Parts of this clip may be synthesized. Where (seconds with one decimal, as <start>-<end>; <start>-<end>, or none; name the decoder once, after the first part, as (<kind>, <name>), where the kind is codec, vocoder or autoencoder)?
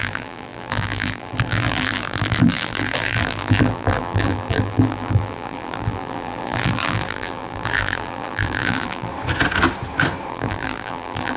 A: 0.0-9.1 (vocoder, BigVGAN v2); 10.3-11.4